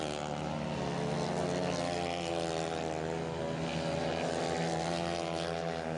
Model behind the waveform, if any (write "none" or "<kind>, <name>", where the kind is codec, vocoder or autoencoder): none